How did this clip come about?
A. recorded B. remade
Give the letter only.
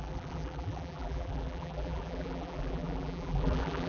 B